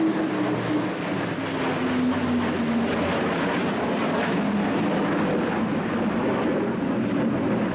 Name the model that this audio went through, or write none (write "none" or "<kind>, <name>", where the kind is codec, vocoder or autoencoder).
none